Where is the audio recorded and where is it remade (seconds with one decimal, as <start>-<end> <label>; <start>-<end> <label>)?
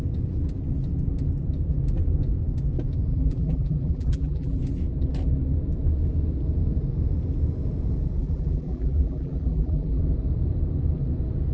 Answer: 0.0-3.1 recorded; 3.1-4.6 remade; 4.6-8.2 recorded; 8.2-10.0 remade; 10.0-11.5 recorded